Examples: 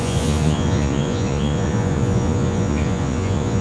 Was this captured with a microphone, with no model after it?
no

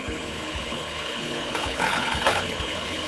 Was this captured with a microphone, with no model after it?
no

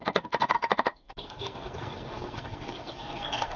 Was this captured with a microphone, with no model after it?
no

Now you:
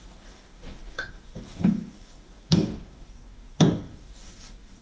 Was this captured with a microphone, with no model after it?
no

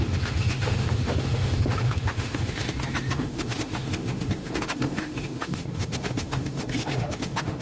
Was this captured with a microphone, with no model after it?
no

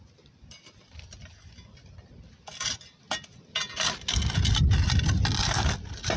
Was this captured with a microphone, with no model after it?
yes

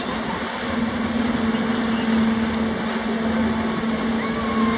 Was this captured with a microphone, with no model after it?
yes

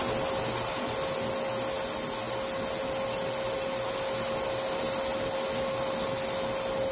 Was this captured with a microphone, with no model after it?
yes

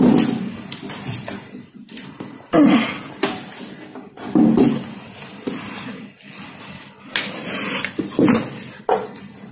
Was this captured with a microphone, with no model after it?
yes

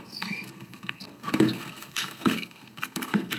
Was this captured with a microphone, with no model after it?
no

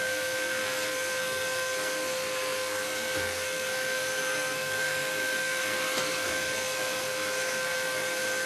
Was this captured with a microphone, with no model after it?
no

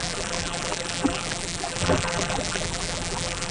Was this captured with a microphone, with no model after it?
no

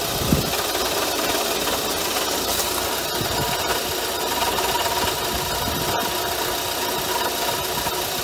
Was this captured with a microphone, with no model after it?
yes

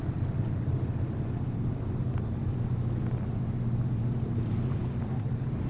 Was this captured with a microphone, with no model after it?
no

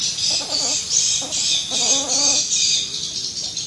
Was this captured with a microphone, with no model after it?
yes